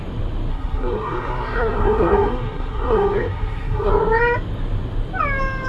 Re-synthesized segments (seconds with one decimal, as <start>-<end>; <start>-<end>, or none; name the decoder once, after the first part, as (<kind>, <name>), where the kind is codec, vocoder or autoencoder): 0.5-3.9 (codec, SNAC)